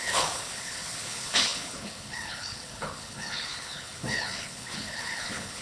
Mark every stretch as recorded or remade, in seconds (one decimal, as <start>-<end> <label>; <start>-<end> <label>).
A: 0.0-5.6 remade